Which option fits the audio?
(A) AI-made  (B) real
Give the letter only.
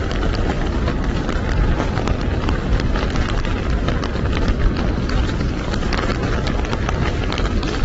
B